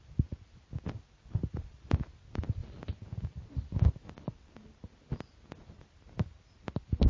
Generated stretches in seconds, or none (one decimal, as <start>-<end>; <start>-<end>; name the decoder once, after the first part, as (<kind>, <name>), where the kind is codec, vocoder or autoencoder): none